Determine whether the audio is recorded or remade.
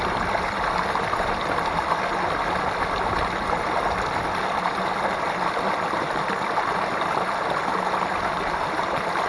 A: recorded